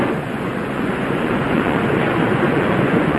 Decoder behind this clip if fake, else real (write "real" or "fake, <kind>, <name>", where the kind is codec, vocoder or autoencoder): fake, vocoder, Vocos